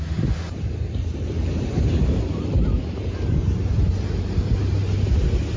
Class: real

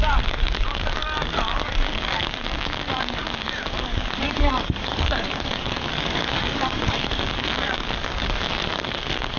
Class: fake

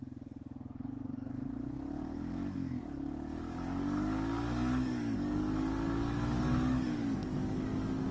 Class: fake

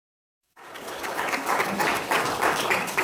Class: fake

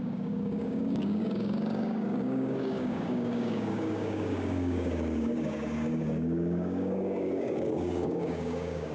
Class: fake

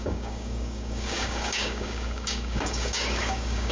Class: fake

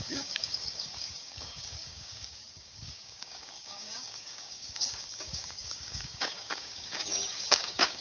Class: fake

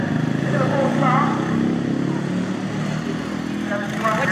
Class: real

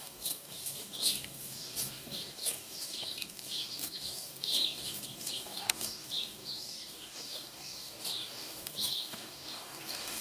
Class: fake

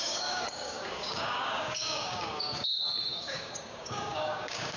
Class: fake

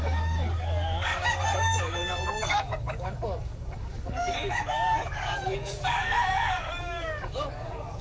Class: fake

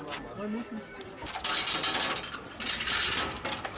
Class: real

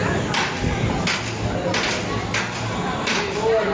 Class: real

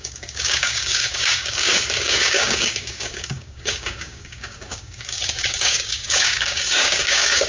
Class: fake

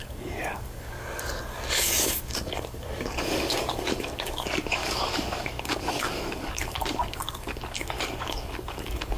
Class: fake